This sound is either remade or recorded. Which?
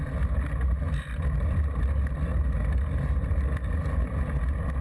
recorded